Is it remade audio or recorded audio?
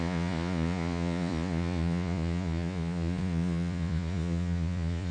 remade